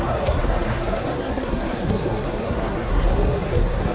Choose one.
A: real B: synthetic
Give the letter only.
B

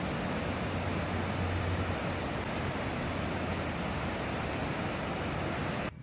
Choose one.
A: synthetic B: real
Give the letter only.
B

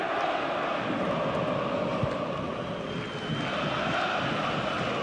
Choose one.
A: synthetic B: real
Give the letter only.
B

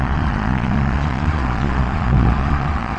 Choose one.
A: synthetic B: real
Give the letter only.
A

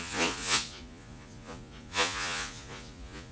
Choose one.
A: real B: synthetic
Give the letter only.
B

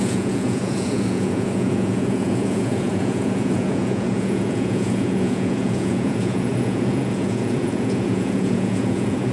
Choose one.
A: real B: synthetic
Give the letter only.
B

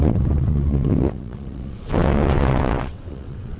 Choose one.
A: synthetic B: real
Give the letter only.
A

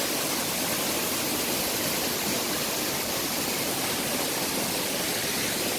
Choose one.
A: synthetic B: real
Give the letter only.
B